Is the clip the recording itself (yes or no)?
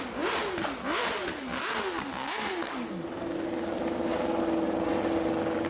yes